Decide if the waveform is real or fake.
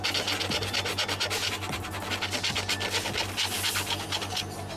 real